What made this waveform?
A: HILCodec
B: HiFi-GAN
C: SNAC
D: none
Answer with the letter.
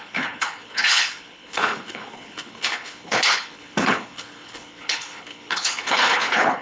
A